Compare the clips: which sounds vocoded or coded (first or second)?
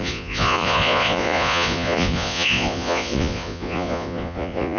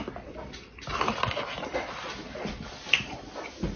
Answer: first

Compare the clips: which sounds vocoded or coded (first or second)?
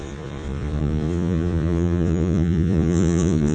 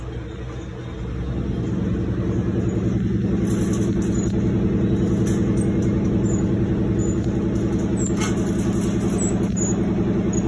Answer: first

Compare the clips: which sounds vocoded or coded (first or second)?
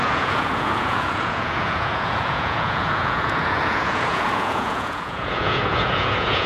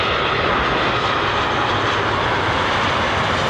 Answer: first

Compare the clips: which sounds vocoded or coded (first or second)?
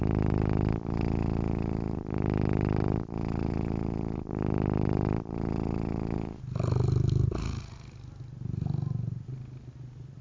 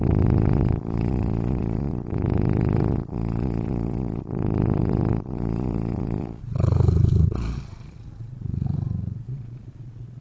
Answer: second